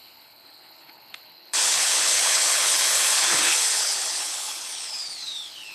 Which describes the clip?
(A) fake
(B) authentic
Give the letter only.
A